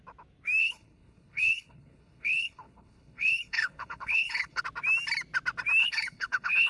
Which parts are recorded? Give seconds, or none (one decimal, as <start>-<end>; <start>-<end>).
0.0-0.6; 4.6-5.8